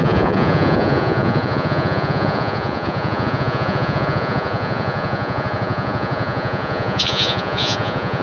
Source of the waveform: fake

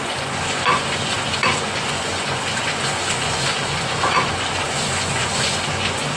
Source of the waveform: fake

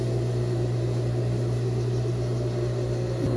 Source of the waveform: real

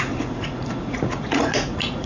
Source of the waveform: fake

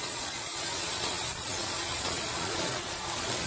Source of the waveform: fake